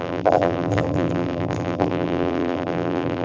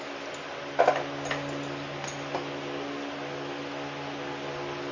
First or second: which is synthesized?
first